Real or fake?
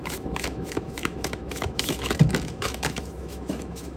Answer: fake